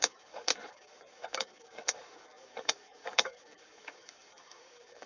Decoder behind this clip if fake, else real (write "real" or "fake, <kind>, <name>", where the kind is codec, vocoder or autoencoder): fake, codec, DAC